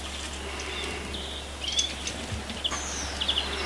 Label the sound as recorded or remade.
recorded